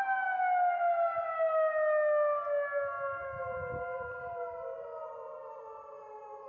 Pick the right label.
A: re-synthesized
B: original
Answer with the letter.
B